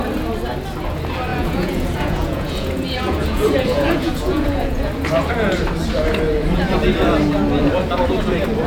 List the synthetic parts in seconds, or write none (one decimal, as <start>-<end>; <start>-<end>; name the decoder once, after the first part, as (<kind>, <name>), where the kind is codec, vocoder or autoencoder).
1.3-4.9 (vocoder, Vocos)